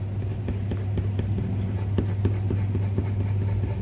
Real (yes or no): yes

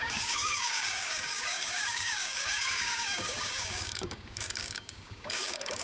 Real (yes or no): no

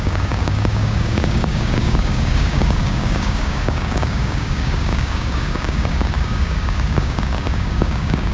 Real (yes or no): no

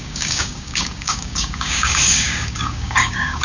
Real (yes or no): no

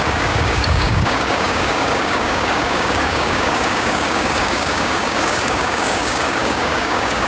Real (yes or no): no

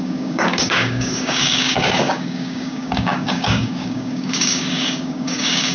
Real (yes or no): no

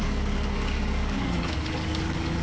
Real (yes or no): no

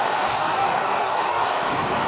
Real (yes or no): no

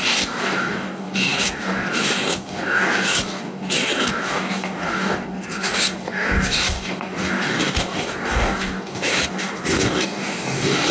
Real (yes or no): no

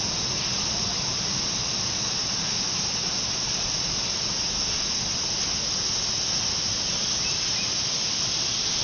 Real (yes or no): yes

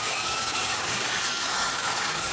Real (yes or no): no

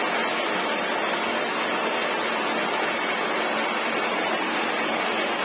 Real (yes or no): yes